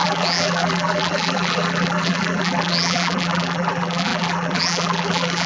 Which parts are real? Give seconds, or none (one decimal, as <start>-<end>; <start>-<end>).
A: none